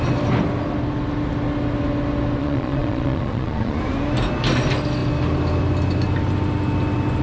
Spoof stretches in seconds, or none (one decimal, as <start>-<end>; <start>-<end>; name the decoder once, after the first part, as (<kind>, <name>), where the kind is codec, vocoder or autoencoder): 2.4-3.8 (vocoder, Vocos)